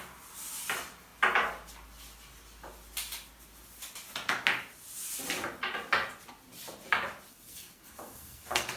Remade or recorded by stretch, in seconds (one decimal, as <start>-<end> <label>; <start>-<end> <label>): 0.0-7.3 recorded; 7.3-8.8 remade